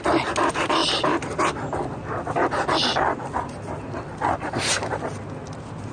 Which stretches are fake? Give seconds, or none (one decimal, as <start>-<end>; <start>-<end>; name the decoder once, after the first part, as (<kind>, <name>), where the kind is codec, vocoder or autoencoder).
none

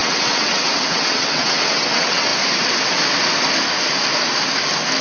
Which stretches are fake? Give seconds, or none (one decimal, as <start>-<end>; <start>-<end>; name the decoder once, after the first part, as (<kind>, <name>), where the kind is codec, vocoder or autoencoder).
0.0-2.3 (vocoder, WaveNeXt)

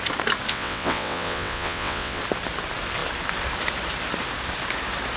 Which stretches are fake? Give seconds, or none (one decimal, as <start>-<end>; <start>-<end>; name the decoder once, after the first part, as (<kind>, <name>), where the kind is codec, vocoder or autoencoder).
0.5-2.2 (vocoder, WaveNeXt)

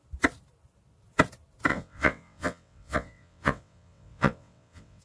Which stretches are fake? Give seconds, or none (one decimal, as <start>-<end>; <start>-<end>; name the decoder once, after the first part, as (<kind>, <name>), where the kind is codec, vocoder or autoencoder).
1.7-5.0 (vocoder, WaveNeXt)

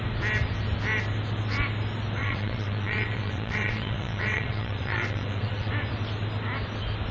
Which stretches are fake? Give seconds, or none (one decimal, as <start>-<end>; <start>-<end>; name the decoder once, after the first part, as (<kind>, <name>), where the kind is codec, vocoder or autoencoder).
2.2-5.7 (vocoder, WaveNeXt)

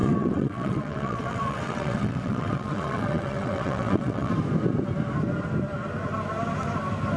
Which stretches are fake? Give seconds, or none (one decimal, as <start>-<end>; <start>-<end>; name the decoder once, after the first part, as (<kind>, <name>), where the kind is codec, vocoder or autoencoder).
0.0-4.3 (vocoder, WaveNeXt)